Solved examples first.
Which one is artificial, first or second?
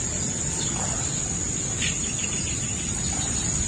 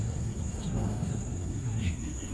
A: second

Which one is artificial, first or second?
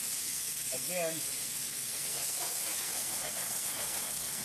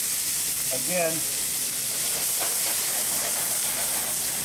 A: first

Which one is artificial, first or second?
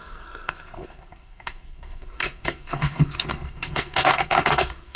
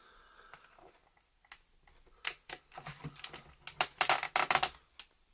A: first